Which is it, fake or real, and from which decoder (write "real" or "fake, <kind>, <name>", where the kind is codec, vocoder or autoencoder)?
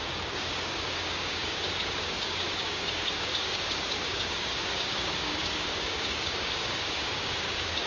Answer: fake, codec, DAC